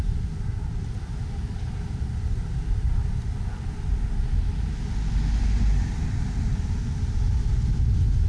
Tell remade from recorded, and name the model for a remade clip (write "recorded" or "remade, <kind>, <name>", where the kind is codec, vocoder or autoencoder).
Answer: recorded